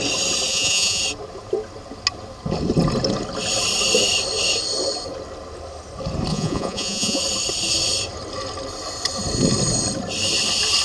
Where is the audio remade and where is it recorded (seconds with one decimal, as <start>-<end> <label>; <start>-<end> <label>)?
0.0-0.5 recorded; 0.5-1.0 remade; 1.0-6.3 recorded; 6.3-7.2 remade; 7.2-10.8 recorded